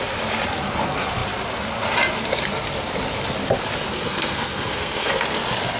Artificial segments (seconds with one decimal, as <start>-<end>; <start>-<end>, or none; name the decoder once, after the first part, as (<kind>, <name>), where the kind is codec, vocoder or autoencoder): 3.9-5.1 (codec, SNAC)

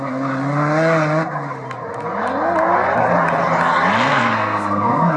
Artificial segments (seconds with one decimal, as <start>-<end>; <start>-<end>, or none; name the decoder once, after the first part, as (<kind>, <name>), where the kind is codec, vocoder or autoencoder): 4.1-5.2 (codec, SNAC)

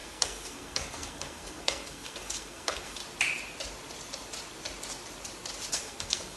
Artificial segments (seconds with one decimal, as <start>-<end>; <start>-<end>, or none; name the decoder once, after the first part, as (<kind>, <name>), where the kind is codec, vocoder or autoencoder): 0.0-3.0 (codec, SNAC); 5.7-6.4

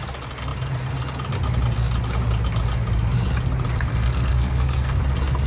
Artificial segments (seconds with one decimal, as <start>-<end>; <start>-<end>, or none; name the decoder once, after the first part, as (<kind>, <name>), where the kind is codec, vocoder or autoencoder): 3.9-5.0 (codec, SNAC)

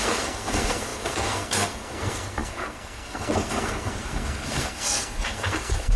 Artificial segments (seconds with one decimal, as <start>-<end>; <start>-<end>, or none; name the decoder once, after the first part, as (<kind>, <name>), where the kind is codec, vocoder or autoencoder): 0.0-6.0 (codec, SNAC)